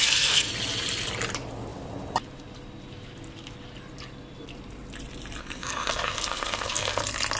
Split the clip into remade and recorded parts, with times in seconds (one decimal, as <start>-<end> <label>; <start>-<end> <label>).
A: 0.0-0.5 remade; 0.5-5.4 recorded; 5.4-7.0 remade; 7.0-7.4 recorded